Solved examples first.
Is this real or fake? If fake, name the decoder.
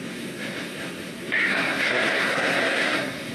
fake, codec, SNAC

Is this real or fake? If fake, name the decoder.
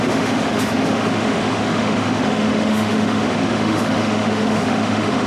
fake, autoencoder, DAC-VAE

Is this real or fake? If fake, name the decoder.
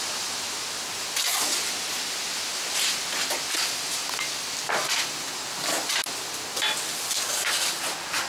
real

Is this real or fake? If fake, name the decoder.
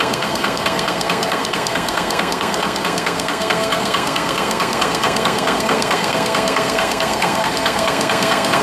fake, codec, SNAC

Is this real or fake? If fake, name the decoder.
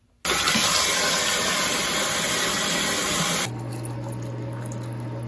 real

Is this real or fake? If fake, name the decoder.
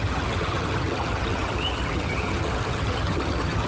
fake, vocoder, HiFi-GAN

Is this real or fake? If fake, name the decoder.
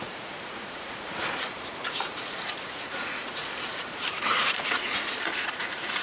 fake, vocoder, Vocos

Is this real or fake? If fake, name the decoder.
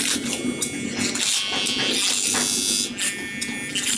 real